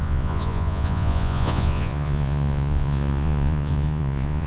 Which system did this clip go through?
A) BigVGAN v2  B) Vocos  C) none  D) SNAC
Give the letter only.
B